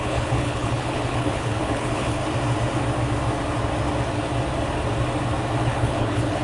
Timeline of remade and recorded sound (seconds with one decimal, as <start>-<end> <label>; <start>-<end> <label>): 0.0-2.2 remade; 2.2-5.6 recorded; 5.6-6.4 remade